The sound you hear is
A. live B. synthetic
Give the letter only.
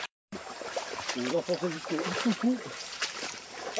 B